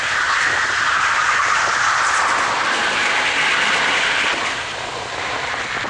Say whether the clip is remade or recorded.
recorded